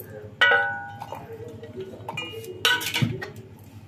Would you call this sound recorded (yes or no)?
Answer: yes